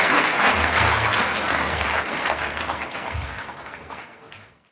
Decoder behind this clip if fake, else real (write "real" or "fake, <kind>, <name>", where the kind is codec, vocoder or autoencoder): fake, codec, SNAC